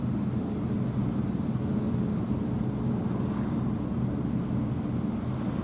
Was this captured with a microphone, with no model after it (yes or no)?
yes